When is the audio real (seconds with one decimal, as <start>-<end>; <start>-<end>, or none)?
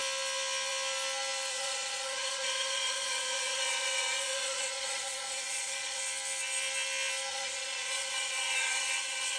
0.0-1.5; 6.0-7.3